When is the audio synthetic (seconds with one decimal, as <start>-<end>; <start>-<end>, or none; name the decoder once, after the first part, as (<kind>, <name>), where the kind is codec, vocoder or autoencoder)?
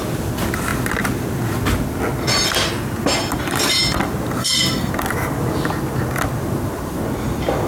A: 4.4-4.9 (codec, SNAC)